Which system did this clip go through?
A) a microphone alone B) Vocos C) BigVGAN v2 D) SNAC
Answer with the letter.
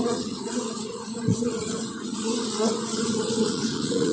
B